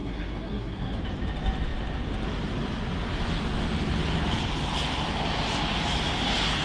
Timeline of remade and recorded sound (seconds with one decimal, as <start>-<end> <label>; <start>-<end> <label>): 0.0-1.0 remade; 1.0-6.6 recorded